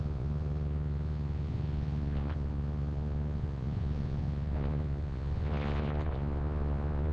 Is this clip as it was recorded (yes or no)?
no